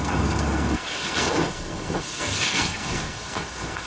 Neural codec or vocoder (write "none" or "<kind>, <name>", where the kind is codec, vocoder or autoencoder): codec, SNAC